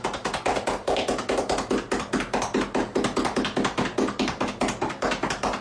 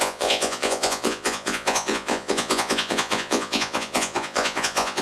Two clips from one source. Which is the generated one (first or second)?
second